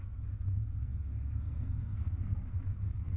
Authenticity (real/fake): fake